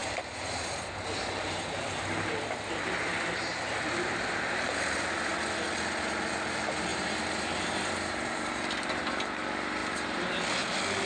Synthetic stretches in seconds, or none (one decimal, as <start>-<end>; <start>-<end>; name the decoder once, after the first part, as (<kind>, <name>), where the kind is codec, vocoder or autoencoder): 0.0-5.3 (vocoder, BigVGAN v2); 6.9-9.1; 9.8-10.4